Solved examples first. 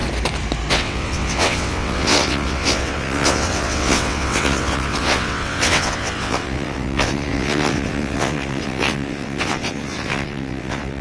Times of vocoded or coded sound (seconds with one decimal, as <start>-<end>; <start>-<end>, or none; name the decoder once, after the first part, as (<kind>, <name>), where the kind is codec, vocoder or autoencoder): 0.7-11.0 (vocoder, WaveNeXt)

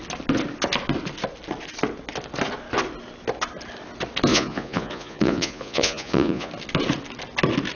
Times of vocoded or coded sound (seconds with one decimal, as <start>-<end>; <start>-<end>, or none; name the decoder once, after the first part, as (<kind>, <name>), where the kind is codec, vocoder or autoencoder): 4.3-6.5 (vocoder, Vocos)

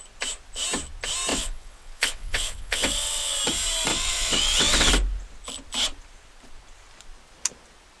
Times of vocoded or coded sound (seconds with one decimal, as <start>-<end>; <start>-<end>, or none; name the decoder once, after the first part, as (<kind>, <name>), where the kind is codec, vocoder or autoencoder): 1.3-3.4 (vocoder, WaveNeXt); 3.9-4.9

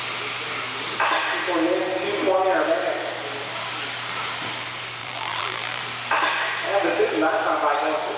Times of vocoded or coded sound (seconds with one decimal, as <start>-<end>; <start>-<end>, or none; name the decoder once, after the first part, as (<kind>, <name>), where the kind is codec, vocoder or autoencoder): 5.0-5.8 (vocoder, BigVGAN v2)

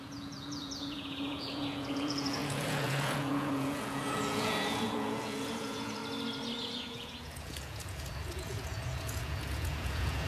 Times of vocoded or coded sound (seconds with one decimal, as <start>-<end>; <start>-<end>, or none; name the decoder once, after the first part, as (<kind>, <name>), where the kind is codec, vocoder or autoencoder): 0.0-6.0 (vocoder, Vocos); 6.6-10.3

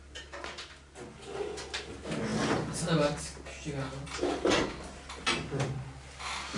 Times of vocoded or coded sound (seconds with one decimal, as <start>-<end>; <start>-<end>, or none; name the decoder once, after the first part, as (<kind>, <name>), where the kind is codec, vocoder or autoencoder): none

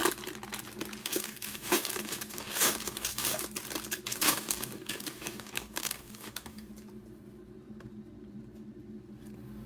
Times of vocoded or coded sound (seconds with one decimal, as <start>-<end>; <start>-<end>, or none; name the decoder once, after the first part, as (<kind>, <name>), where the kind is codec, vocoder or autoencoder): 1.0-3.4 (codec, DAC); 4.1-6.7

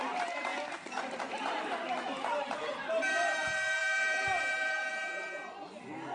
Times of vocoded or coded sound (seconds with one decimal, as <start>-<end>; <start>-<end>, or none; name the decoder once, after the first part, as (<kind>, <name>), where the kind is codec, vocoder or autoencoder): 0.0-0.5 (vocoder, BigVGAN v2); 1.1-6.1